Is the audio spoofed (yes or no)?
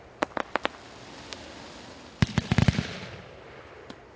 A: no